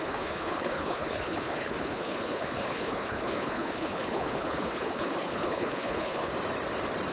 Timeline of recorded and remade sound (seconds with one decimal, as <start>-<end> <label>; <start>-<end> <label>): 0.0-6.3 remade; 6.3-7.1 recorded